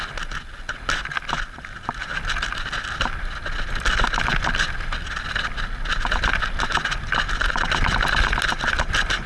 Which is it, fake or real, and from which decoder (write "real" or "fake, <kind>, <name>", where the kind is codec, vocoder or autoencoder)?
real